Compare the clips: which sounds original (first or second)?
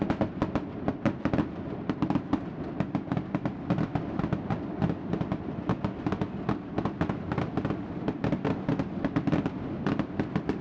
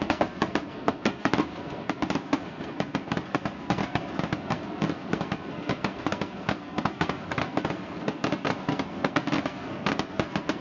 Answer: first